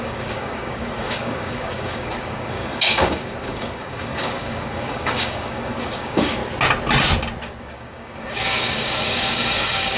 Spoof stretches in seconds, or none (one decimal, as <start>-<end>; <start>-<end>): 0.0-6.4; 7.6-10.0

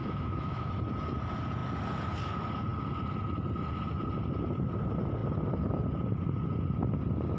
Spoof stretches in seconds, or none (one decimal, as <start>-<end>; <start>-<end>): 0.0-0.7

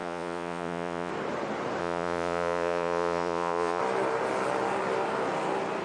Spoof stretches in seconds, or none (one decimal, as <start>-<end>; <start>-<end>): 0.0-1.1; 1.8-3.8

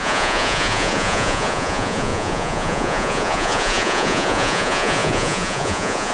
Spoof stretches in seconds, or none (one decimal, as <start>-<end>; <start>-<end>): 0.0-6.1

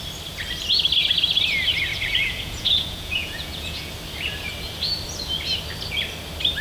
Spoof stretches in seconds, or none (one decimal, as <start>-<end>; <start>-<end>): 1.9-3.9